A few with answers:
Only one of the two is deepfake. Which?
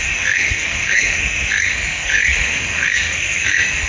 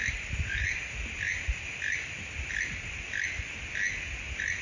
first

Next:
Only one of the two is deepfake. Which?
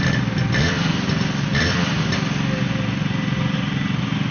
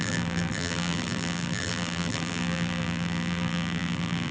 second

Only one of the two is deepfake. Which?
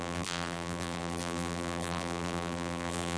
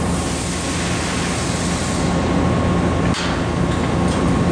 first